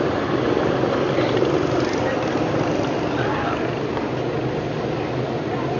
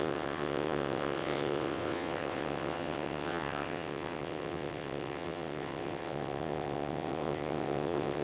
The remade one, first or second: second